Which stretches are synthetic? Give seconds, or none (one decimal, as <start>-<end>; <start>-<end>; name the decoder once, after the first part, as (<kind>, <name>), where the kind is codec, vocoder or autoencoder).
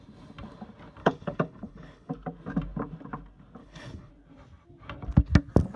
1.0-2.1 (codec, HILCodec); 3.6-4.1